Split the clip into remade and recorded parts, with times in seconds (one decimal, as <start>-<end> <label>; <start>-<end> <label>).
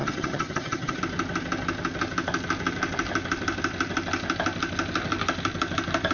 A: 0.0-1.0 remade; 1.0-6.1 recorded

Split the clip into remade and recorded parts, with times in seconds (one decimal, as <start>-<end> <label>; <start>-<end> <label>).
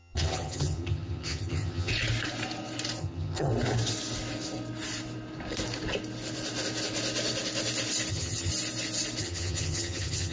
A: 0.0-1.9 remade; 1.9-3.0 recorded; 3.0-3.5 remade; 3.5-8.1 recorded; 8.1-8.5 remade; 8.5-9.2 recorded; 9.2-10.3 remade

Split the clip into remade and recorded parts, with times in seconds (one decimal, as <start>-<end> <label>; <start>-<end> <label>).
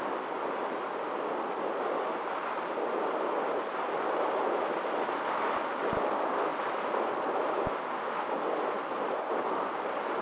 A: 0.0-10.2 recorded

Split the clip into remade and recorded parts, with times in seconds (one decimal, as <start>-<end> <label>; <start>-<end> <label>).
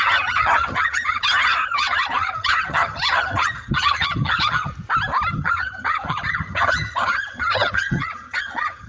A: 0.0-4.7 remade; 4.7-5.3 recorded; 5.3-8.9 remade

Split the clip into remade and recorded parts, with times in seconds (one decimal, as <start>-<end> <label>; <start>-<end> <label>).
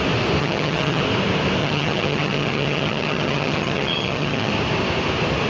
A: 0.0-0.4 recorded; 0.4-1.0 remade; 1.0-1.6 recorded; 1.6-4.5 remade; 4.5-5.5 recorded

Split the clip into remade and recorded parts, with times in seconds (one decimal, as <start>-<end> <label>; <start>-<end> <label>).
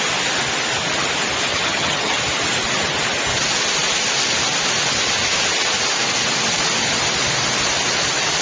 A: 0.0-1.5 recorded; 1.5-2.2 remade; 2.2-8.4 recorded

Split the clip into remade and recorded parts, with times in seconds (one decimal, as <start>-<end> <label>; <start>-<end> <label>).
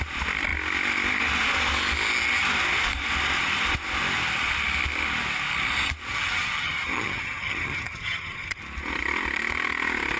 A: 0.0-6.1 recorded; 6.1-8.6 remade; 8.6-10.2 recorded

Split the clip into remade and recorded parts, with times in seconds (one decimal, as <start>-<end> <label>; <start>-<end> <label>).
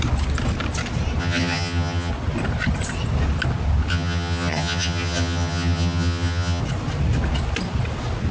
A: 0.0-1.2 recorded; 1.2-2.1 remade; 2.1-3.9 recorded; 3.9-6.6 remade; 6.6-8.3 recorded